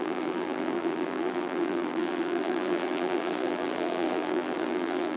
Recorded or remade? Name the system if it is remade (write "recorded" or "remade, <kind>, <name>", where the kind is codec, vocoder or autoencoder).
remade, vocoder, BigVGAN v2